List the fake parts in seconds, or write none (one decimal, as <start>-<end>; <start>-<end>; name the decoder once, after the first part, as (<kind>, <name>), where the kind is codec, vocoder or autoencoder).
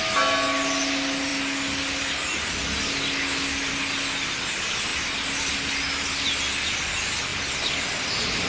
none